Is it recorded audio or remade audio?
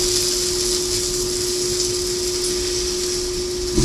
recorded